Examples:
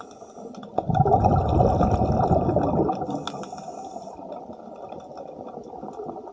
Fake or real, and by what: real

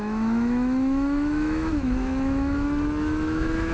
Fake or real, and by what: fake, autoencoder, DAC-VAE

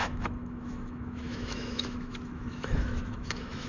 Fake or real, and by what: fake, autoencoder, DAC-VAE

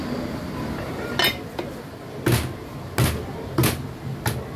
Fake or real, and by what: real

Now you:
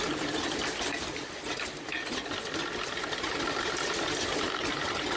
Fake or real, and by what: real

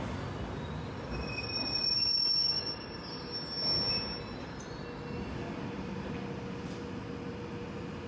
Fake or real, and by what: real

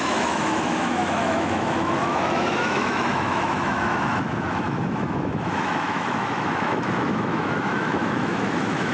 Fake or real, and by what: fake, autoencoder, DAC-VAE